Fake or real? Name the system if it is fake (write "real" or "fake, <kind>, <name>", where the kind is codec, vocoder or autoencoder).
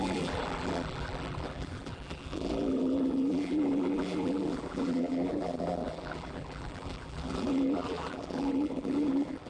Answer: fake, vocoder, BigVGAN v2